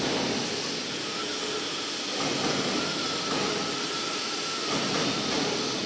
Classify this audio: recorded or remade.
recorded